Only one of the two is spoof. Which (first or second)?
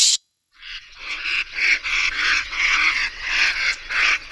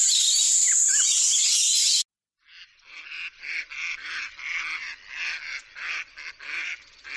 first